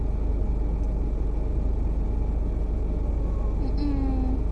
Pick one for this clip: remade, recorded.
recorded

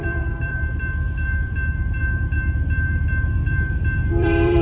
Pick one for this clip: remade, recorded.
remade